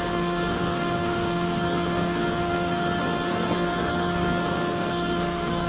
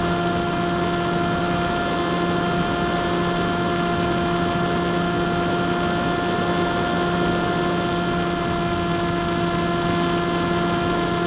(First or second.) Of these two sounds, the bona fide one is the second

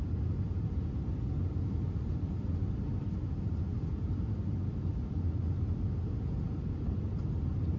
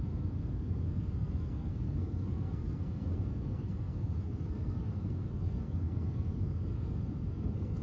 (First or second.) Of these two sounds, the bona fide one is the first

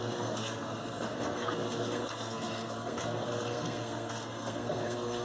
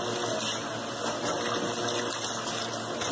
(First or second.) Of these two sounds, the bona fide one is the second